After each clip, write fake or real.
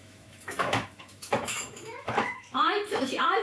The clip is fake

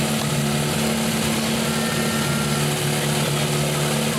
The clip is real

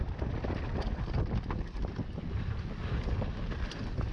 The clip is real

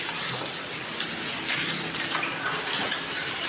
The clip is real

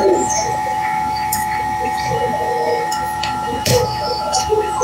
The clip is fake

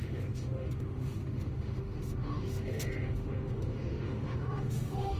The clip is fake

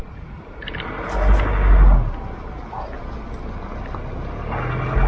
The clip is real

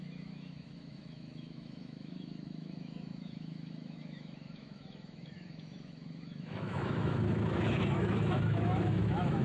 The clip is fake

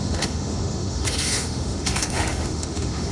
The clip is fake